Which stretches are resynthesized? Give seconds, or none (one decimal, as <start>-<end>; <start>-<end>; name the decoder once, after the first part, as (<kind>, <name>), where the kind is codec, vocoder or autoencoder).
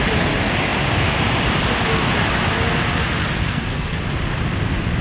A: 3.4-4.0 (codec, SNAC)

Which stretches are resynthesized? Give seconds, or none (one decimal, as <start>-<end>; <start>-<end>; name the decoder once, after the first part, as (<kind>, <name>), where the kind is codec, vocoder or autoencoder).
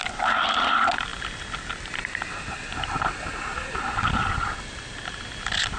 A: none